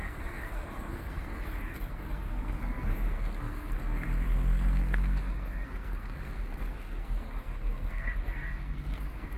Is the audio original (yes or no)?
no